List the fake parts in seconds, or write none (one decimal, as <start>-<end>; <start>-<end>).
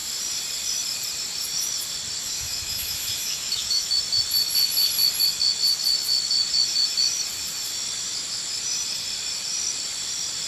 2.2-3.9